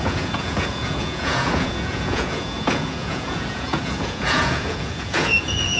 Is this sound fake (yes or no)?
yes